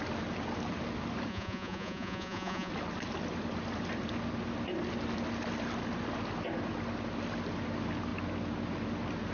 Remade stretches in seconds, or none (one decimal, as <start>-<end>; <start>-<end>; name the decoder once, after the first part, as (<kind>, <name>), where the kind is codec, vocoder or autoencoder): 1.3-2.7 (vocoder, Vocos)